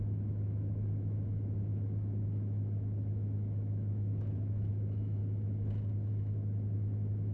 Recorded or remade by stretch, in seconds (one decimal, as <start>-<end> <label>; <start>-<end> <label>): 0.0-5.2 remade; 5.2-6.1 recorded; 6.1-7.3 remade

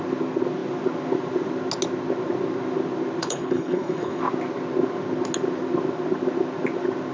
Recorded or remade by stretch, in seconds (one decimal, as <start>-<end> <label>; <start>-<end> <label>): 0.0-3.2 recorded; 3.2-4.2 remade; 4.2-7.1 recorded

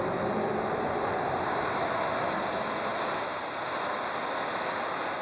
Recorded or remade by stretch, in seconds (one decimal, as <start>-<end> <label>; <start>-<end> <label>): 0.0-5.2 recorded

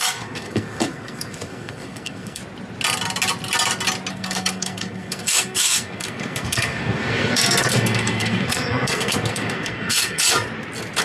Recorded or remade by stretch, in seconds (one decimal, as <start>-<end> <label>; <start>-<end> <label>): 0.0-2.4 remade; 2.4-4.1 recorded; 4.1-10.2 remade; 10.2-11.0 recorded

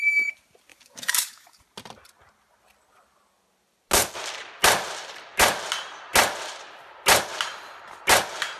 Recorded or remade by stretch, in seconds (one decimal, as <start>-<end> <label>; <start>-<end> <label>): 0.0-0.7 recorded; 0.7-1.6 remade; 1.6-8.6 recorded

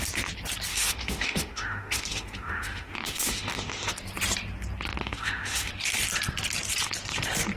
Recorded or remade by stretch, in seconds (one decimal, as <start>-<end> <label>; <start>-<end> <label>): 0.0-0.7 recorded; 0.7-3.9 remade; 3.9-5.0 recorded; 5.0-5.7 remade; 5.7-7.6 recorded

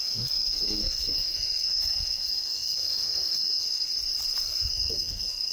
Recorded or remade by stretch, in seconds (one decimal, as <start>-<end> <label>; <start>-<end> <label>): 0.0-3.9 remade; 3.9-4.4 recorded; 4.4-5.5 remade

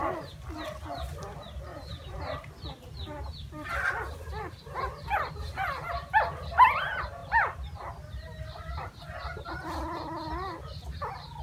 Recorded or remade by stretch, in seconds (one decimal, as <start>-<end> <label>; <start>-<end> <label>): 0.0-1.7 recorded; 1.7-2.5 remade; 2.5-11.4 recorded